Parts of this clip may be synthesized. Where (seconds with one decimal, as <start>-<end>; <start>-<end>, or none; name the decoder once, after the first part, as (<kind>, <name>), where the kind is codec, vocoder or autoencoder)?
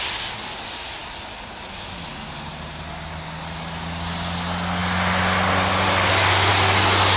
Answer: none